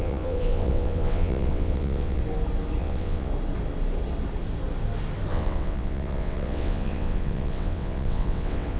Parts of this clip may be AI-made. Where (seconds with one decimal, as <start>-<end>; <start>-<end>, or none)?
0.0-2.2; 2.8-3.3; 5.3-8.8